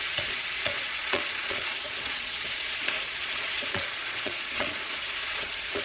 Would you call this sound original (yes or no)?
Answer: no